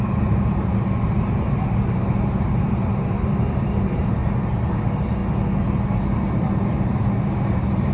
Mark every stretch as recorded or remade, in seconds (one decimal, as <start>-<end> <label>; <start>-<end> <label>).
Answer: 0.0-4.2 remade; 4.2-4.7 recorded; 4.7-5.2 remade; 5.2-6.3 recorded; 6.3-7.9 remade